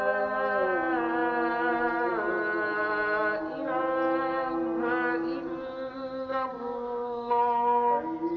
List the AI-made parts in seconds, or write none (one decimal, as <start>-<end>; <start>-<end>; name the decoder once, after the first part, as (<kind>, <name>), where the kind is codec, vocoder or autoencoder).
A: 6.5-7.3 (codec, SNAC)